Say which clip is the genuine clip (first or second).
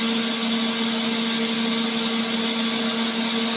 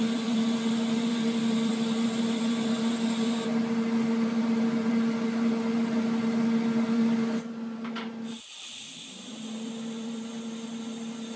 first